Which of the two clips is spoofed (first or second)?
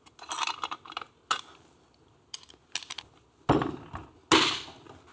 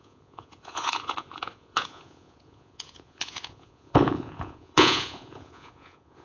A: second